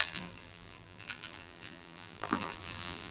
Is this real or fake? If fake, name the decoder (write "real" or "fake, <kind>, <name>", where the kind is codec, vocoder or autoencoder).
fake, vocoder, BigVGAN v2